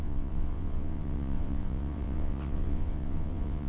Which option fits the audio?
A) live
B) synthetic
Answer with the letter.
B